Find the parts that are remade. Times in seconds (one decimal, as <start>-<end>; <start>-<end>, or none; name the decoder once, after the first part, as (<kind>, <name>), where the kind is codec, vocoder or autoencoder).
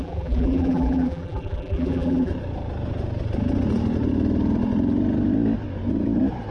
0.0-2.3 (vocoder, BigVGAN v2)